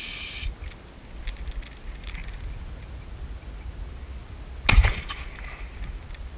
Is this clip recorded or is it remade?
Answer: recorded